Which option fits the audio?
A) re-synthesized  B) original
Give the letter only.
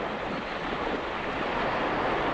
B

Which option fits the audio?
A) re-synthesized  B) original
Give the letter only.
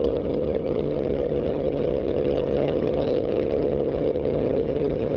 A